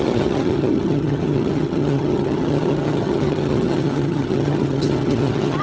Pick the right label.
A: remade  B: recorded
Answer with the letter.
A